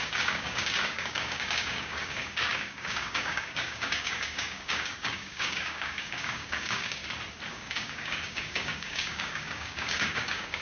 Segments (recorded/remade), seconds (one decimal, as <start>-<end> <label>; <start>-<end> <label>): 0.0-7.0 remade; 7.0-7.5 recorded; 7.5-10.6 remade